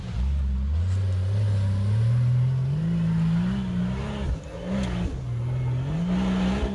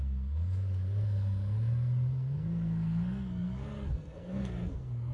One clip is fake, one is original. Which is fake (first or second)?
second